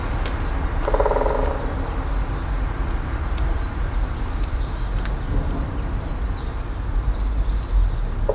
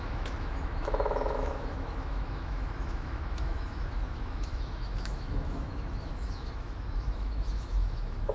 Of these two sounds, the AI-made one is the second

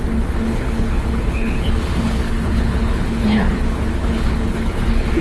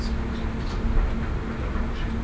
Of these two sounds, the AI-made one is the first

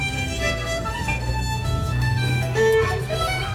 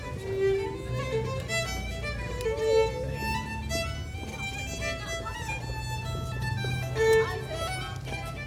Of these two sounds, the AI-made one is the first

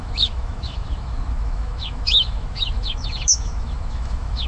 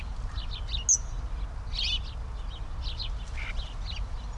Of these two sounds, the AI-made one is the first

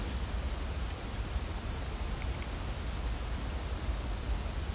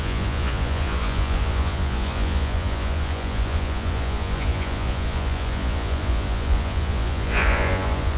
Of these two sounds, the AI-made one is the second